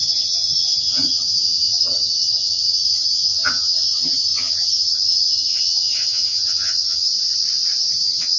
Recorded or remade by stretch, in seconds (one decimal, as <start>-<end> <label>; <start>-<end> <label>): 0.0-7.1 remade; 7.1-7.8 recorded; 7.8-8.4 remade